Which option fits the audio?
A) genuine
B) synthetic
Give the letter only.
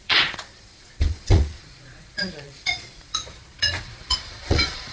B